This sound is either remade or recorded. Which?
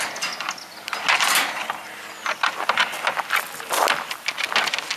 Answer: recorded